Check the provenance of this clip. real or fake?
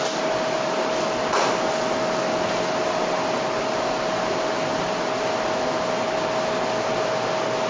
real